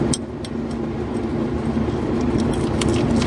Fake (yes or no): no